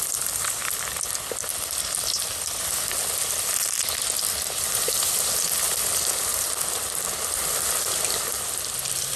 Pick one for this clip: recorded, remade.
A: remade